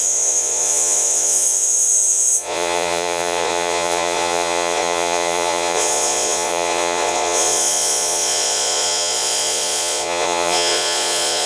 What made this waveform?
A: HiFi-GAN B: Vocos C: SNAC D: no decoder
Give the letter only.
B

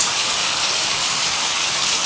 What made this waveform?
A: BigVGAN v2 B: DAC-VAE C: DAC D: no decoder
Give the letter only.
C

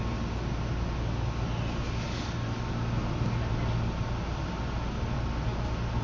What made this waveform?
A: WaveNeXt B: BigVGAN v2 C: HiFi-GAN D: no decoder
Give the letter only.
D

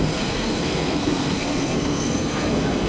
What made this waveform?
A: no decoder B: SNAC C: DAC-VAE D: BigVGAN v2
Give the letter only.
B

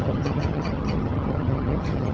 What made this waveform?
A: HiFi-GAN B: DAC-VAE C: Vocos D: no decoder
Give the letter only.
A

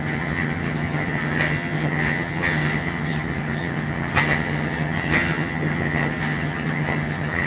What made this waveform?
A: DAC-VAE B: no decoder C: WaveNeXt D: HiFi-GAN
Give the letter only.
D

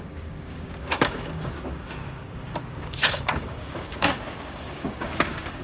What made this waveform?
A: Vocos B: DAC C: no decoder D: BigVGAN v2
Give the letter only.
B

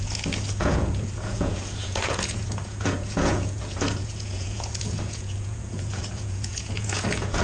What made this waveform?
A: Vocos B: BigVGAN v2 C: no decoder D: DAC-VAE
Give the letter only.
A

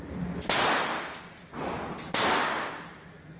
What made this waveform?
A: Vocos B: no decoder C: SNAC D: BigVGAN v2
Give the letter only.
B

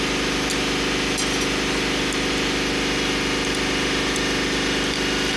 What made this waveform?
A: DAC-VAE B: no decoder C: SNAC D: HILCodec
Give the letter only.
B